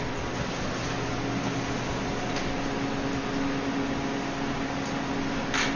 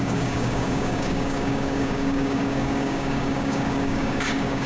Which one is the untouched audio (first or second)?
first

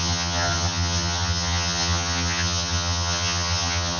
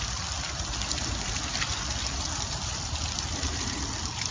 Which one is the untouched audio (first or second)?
second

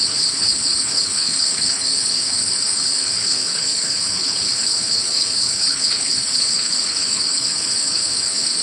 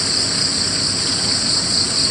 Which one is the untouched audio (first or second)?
second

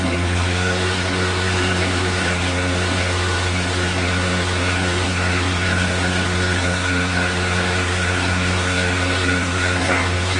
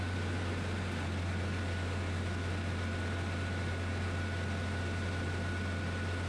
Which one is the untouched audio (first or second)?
second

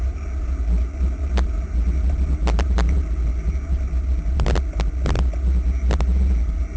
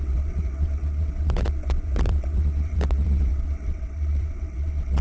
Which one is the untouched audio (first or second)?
first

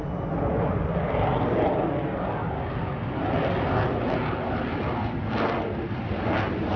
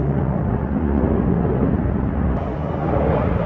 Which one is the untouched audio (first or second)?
first